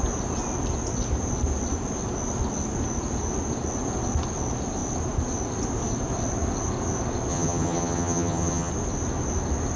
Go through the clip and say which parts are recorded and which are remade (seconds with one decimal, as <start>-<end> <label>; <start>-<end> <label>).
0.0-7.3 recorded; 7.3-8.7 remade; 8.7-9.8 recorded